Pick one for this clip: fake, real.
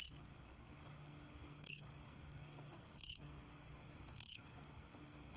fake